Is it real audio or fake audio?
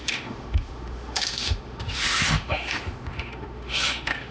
fake